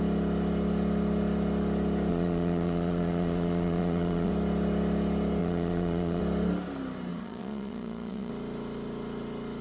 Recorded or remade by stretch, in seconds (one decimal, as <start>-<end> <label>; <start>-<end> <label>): 0.0-2.1 recorded; 2.1-4.3 remade; 4.3-5.4 recorded; 5.4-6.2 remade; 6.2-7.1 recorded; 7.1-8.3 remade; 8.3-9.6 recorded